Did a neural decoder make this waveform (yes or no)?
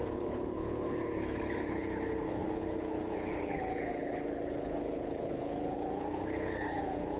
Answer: yes